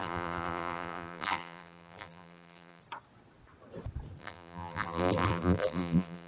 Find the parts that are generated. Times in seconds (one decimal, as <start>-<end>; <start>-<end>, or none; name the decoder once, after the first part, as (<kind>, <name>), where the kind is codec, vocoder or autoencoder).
0.0-2.8 (vocoder, BigVGAN v2); 4.2-6.3